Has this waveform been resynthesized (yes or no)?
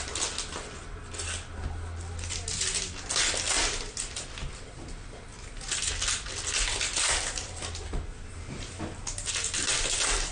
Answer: no